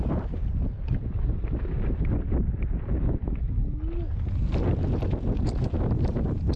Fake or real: real